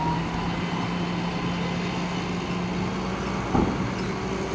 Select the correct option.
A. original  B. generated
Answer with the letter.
A